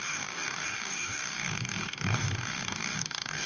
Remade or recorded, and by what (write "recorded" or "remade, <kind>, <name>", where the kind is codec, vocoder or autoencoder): remade, codec, DAC